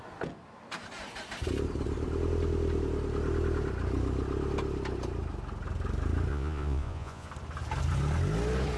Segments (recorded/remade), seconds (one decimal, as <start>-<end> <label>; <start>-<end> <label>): 0.0-6.3 recorded; 6.3-7.3 remade; 7.3-8.8 recorded